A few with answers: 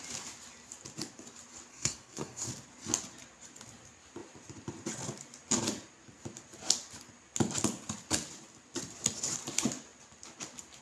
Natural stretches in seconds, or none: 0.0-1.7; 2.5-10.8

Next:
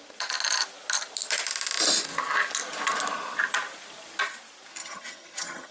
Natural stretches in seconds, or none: 0.0-4.8

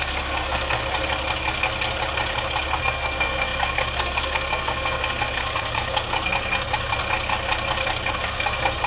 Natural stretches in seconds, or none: 0.8-2.8; 7.0-8.1